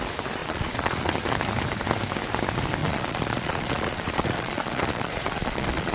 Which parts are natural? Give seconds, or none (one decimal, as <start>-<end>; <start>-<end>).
0.0-0.4; 1.2-2.8